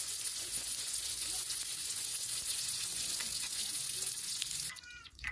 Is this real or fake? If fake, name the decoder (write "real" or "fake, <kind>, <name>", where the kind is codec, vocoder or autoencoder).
fake, vocoder, Vocos